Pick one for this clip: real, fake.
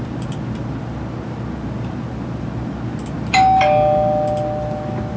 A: real